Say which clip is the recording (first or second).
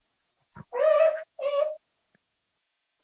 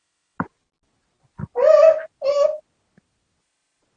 second